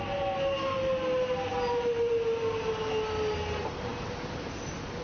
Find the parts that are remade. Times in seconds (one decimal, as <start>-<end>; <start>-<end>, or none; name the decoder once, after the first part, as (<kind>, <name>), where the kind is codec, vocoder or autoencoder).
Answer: none

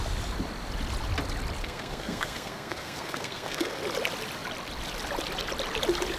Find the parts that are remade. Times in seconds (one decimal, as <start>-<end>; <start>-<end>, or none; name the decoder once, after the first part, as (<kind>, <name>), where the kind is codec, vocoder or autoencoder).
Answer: 1.6-3.8 (codec, SNAC)

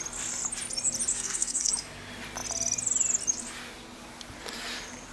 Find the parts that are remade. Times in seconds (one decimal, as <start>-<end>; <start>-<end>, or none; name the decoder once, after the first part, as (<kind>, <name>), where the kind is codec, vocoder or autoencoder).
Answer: 1.1-1.7 (codec, SNAC)

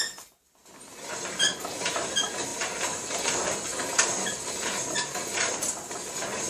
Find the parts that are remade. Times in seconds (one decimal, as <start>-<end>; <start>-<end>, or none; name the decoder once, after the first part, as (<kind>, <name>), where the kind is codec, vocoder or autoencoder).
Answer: none

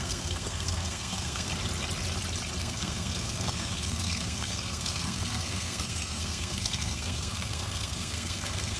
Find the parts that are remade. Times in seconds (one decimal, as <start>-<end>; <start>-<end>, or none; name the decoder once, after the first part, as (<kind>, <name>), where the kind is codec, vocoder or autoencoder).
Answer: 0.0-1.5 (codec, SNAC); 2.6-8.8

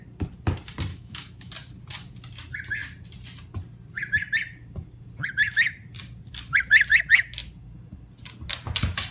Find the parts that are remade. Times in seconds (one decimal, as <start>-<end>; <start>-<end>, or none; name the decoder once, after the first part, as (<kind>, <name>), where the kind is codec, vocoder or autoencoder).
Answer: 0.9-1.5 (autoencoder, DAC-VAE)

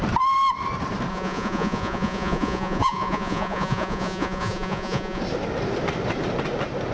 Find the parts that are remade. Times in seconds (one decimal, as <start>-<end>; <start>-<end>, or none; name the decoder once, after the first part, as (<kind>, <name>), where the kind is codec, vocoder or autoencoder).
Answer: 1.1-5.2 (vocoder, Vocos)

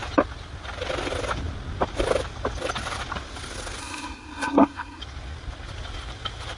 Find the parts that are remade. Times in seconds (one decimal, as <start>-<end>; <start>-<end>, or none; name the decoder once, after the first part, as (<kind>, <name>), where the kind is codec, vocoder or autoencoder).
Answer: 3.8-5.0 (codec, SNAC)